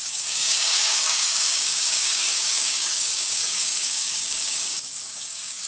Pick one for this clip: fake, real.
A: fake